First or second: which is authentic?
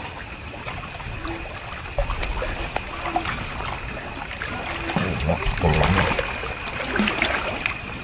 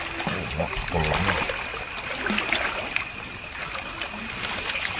second